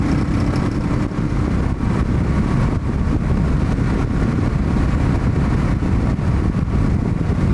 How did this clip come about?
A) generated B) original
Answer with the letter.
B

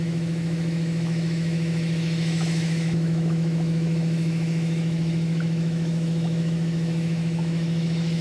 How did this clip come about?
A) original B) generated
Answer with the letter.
B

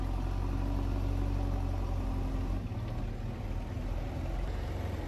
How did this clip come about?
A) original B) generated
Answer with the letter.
A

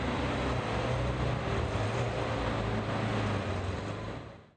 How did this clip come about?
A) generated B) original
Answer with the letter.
B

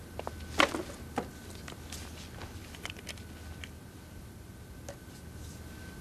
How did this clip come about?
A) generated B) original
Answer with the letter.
B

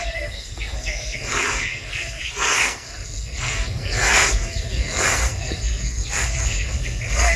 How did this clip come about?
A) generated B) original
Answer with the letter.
A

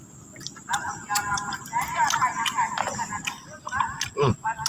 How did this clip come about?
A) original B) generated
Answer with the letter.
A